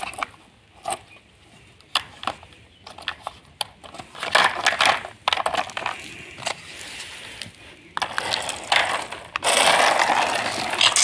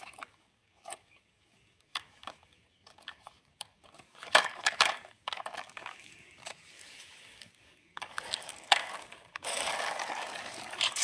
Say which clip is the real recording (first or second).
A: first